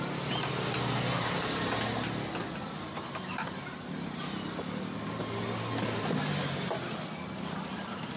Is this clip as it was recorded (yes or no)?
yes